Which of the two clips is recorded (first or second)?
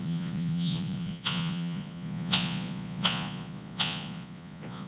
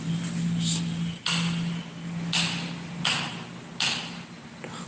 second